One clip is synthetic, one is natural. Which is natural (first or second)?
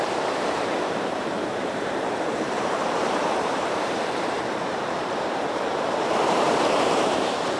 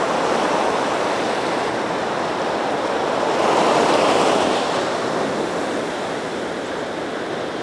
second